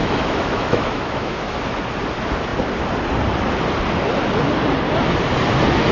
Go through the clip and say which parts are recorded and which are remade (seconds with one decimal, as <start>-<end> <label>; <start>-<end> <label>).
0.0-1.6 remade; 1.6-5.9 recorded